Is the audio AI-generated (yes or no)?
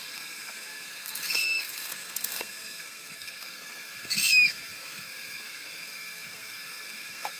yes